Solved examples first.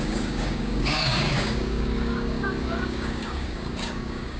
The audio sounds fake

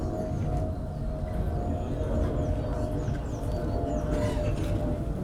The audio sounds real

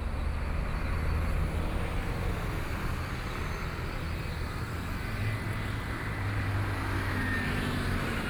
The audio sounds real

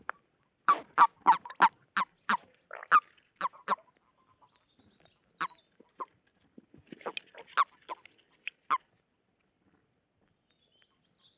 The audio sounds real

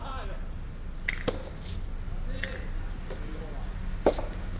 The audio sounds real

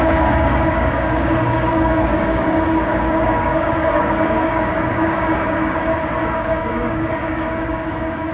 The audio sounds fake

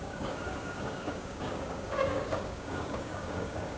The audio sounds fake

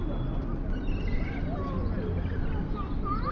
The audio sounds real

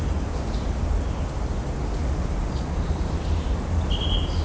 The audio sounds real